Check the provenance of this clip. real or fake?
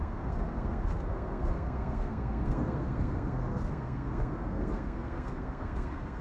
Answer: fake